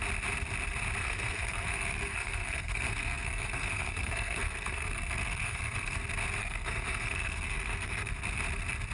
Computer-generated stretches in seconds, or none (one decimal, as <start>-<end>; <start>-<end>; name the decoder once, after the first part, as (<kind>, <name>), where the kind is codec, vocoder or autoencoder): 1.0-6.0 (codec, SNAC); 6.4-8.1